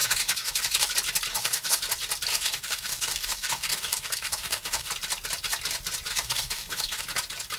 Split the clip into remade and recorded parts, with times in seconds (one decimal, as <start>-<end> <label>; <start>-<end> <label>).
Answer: 0.0-0.9 remade; 0.9-1.3 recorded; 1.3-1.8 remade; 1.8-2.3 recorded; 2.3-4.9 remade; 4.9-6.1 recorded; 6.1-7.0 remade; 7.0-7.6 recorded